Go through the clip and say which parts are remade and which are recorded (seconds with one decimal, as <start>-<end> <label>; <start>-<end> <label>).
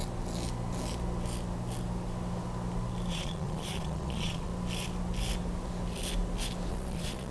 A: 0.0-3.1 recorded; 3.1-4.5 remade; 4.5-6.7 recorded; 6.7-7.3 remade